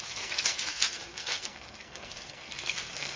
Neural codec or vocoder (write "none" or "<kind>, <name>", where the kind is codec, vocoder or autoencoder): codec, SNAC